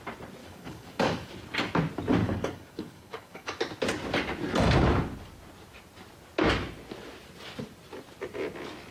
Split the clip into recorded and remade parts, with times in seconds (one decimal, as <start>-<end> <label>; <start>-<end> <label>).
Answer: 0.0-0.4 recorded; 0.4-1.3 remade; 1.3-2.2 recorded; 2.2-3.6 remade; 3.6-8.9 recorded